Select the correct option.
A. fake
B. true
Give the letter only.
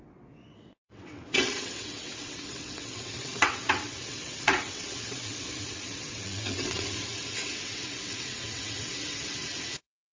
A